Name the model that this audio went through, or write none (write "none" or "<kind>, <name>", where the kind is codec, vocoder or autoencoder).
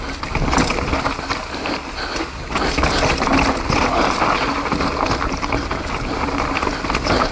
none